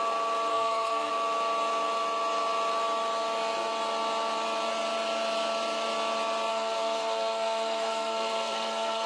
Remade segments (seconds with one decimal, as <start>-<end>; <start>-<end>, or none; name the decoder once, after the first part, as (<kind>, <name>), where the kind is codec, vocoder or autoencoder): 0.5-1.1 (codec, SNAC); 6.5-9.1